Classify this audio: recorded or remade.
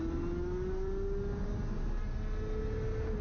recorded